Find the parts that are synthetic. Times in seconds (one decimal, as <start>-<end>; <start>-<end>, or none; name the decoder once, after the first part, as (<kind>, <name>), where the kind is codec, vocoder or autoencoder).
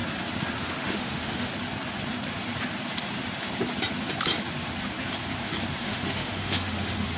0.6-1.5 (autoencoder, DAC-VAE); 5.8-7.2